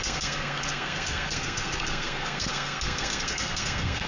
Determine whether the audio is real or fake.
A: fake